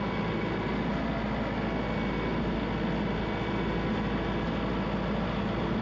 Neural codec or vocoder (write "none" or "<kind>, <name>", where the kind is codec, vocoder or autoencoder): none